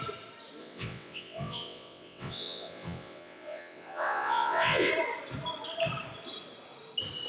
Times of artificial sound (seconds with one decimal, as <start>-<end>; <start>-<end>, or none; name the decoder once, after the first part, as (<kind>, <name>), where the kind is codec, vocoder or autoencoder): 0.6-4.9 (vocoder, WaveNeXt)